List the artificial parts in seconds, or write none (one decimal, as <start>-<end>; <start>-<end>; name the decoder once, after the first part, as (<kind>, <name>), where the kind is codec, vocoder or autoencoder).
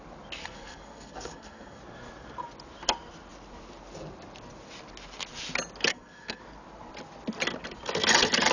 0.4-1.8 (codec, SNAC); 5.9-6.4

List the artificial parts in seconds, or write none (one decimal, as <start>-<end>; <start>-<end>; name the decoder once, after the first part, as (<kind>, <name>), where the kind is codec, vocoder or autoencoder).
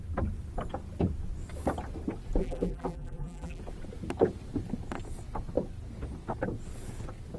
2.4-3.6 (vocoder, BigVGAN v2)